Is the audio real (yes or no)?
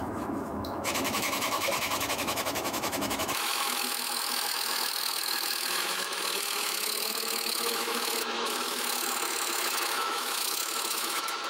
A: no